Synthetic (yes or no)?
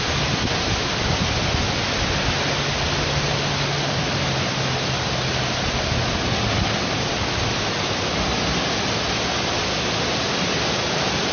no